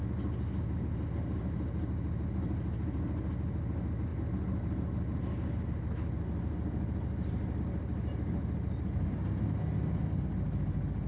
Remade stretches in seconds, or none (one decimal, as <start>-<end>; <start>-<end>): none